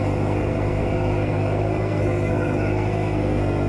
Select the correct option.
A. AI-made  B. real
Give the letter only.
A